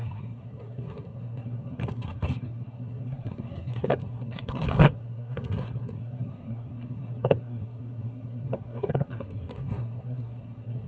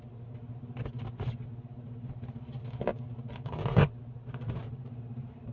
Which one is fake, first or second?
first